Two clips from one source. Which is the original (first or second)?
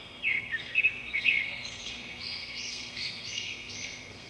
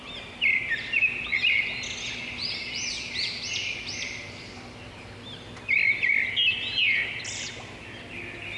second